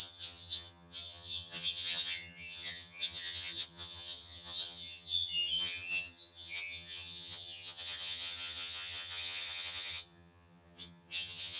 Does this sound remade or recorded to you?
remade